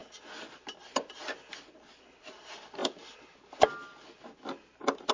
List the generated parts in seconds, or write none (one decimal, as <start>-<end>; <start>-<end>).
1.5-2.8